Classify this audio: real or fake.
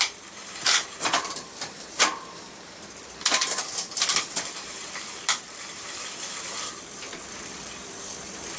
fake